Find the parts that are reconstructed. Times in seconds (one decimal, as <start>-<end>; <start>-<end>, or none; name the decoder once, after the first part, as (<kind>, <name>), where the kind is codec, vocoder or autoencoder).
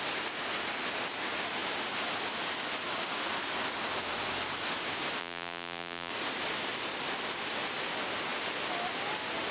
5.2-6.1 (vocoder, BigVGAN v2)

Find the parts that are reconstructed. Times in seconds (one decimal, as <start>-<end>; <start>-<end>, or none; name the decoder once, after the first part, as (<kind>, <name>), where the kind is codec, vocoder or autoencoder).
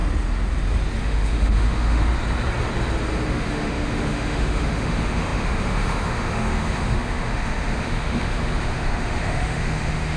1.0-2.0 (autoencoder, DAC-VAE); 3.3-10.2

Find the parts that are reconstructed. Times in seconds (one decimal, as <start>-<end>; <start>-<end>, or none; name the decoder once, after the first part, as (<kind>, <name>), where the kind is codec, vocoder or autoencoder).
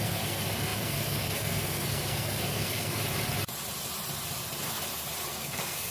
0.0-3.0 (codec, SNAC); 5.3-5.9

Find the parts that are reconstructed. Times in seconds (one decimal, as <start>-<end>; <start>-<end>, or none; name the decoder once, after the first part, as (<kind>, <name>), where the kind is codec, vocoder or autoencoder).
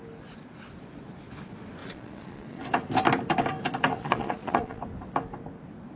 1.8-2.6 (vocoder, Vocos); 3.9-4.8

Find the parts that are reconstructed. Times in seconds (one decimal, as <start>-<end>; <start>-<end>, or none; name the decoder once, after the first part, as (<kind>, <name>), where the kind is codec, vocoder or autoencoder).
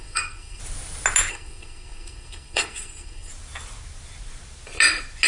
0.0-0.6 (codec, SNAC); 1.3-3.3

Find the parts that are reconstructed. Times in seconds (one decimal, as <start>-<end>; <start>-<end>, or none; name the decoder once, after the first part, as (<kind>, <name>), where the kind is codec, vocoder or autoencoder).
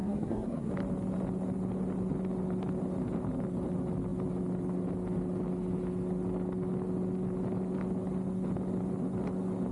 0.0-0.7 (codec, SNAC)